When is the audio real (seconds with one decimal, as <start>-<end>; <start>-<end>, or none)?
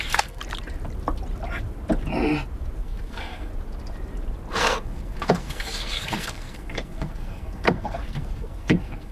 0.4-2.8; 3.5-4.5